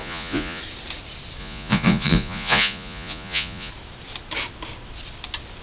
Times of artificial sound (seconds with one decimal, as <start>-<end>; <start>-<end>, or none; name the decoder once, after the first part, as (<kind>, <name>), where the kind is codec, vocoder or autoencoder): 0.0-0.6 (vocoder, Vocos); 1.4-3.7